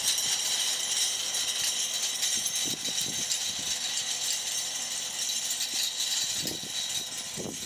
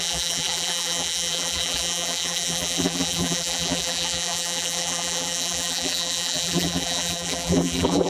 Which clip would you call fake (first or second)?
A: second